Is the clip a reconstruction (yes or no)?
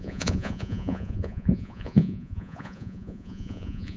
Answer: yes